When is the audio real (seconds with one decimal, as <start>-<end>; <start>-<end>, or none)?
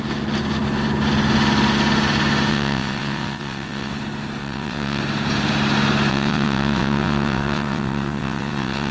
0.0-2.5; 3.9-4.4; 5.0-6.1